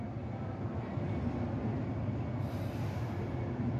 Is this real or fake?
real